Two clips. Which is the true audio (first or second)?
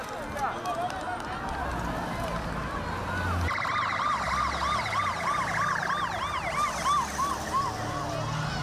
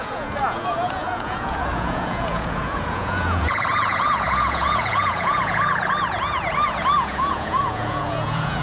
first